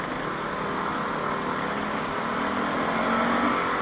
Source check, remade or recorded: recorded